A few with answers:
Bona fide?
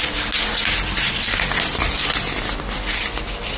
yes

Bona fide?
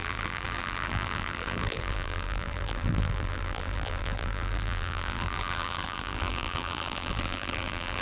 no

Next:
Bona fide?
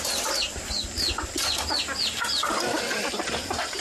yes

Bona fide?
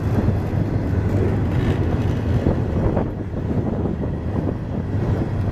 yes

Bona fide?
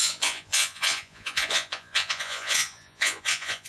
no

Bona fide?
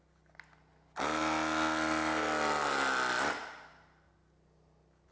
yes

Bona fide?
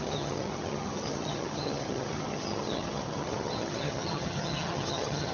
no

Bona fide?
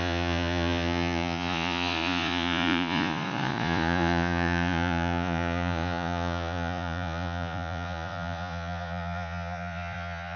no